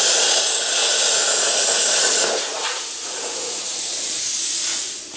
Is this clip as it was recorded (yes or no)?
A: no